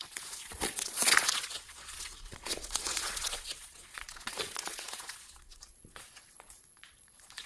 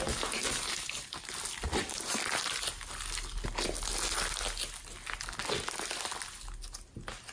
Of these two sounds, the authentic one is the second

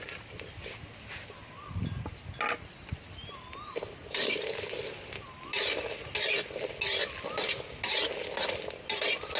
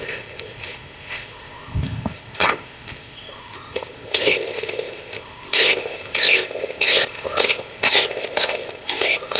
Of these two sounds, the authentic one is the first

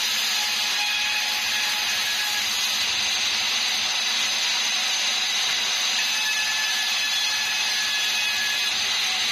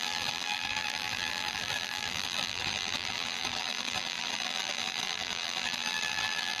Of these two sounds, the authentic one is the first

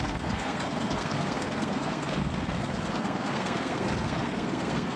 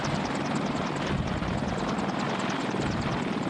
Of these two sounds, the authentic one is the second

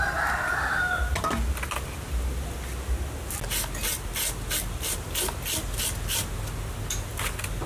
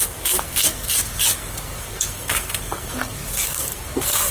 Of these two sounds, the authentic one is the first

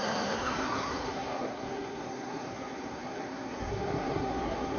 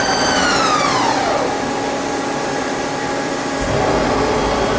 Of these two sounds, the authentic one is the second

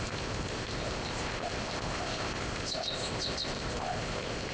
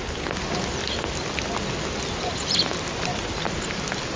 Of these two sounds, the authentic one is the second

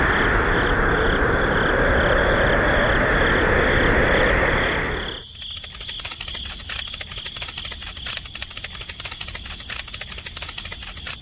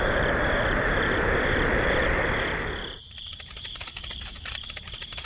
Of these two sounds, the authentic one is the first